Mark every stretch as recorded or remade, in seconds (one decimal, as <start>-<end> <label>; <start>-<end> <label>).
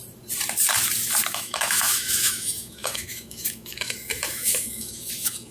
0.0-1.3 recorded; 1.3-5.5 remade